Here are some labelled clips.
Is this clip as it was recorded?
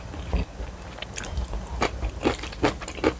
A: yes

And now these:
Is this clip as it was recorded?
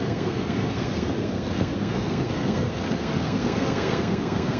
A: no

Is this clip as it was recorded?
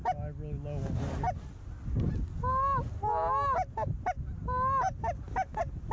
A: yes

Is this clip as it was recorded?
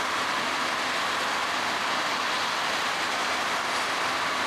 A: yes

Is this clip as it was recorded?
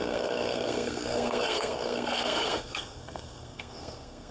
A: no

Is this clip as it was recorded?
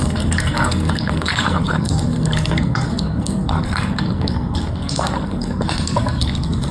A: no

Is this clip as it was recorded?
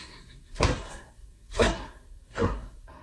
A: no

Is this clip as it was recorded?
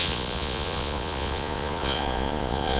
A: no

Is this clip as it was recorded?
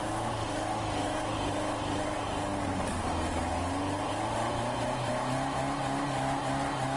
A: yes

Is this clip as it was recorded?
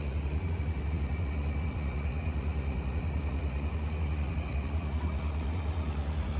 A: no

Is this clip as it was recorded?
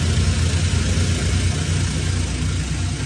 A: yes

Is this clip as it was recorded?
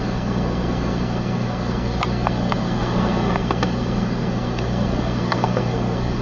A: no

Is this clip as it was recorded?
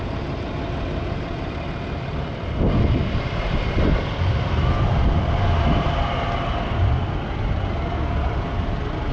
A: yes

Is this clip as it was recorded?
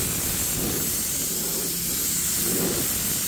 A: yes